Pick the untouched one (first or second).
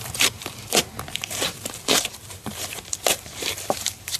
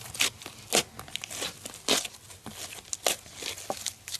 second